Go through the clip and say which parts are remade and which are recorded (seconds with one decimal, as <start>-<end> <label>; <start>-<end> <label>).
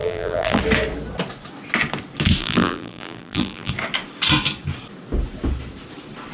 0.0-0.6 remade; 0.6-2.4 recorded; 2.4-3.7 remade; 3.7-6.3 recorded